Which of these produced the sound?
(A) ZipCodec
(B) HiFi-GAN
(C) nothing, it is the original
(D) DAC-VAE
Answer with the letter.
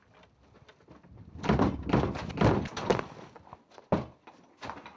C